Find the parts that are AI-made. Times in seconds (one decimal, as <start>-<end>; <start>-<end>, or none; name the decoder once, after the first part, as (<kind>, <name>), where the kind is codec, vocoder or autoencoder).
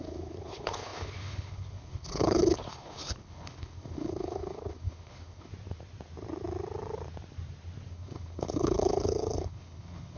0.0-5.5 (codec, HILCodec); 7.9-10.2